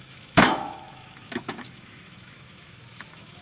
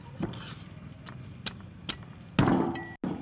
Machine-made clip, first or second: first